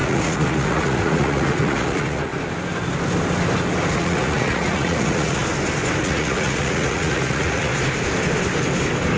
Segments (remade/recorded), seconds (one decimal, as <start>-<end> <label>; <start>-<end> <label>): 0.0-2.3 remade; 2.3-3.9 recorded; 3.9-5.4 remade; 5.4-6.0 recorded; 6.0-7.7 remade; 7.7-9.2 recorded